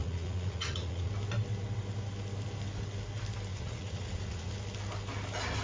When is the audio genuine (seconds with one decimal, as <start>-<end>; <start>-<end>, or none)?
1.1-3.5; 4.5-5.6

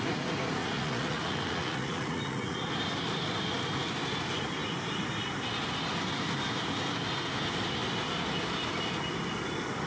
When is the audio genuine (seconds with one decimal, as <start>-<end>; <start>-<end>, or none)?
0.0-0.6; 2.7-9.9

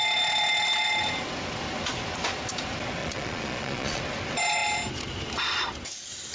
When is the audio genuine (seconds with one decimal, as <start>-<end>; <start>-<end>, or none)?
0.0-3.0; 4.0-6.3

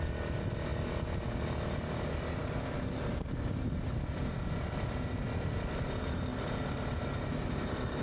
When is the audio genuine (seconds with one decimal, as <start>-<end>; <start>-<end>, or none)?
0.0-8.0

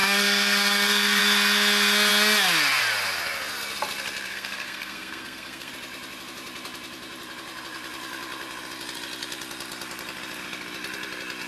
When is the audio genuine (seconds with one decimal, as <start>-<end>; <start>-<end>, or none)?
1.2-4.3; 5.7-11.5

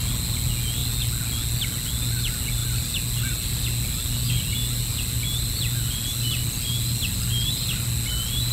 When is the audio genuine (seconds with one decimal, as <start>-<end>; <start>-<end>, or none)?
0.0-8.5